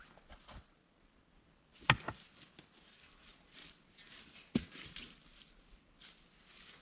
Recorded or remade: recorded